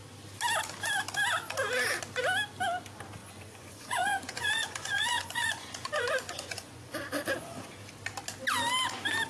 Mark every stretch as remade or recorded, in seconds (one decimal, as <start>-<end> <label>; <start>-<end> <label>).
0.0-3.2 recorded; 3.2-7.6 remade; 7.6-9.3 recorded